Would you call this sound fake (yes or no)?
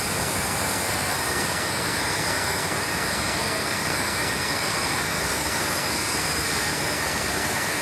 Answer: yes